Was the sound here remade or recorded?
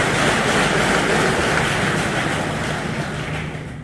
recorded